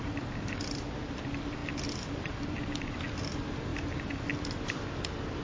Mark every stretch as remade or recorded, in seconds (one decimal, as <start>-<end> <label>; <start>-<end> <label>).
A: 0.0-5.4 recorded